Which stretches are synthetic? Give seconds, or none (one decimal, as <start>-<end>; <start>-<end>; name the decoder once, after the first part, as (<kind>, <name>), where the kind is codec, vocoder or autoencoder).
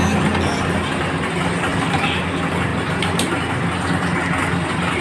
1.7-2.2 (vocoder, BigVGAN v2); 2.7-3.3